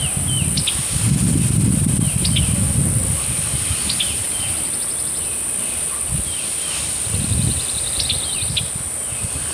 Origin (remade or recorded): recorded